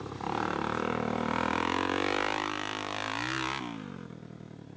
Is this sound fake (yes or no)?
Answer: no